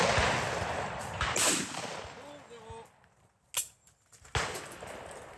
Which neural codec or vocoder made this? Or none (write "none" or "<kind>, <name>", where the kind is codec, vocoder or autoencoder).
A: none